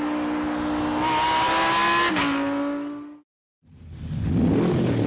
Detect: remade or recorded recorded